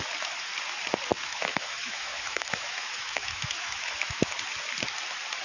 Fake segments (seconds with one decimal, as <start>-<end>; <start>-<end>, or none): 1.1-4.3